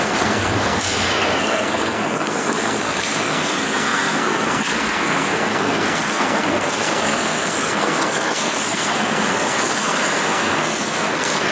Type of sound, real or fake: fake